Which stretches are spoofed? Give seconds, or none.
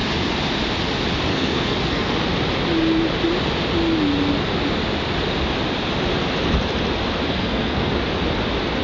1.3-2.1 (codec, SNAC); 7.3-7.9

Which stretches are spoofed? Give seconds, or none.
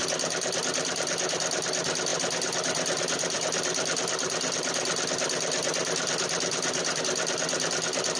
none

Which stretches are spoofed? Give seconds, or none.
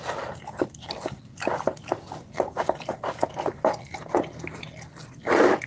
none